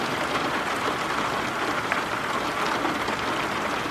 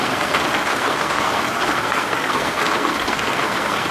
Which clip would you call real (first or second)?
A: first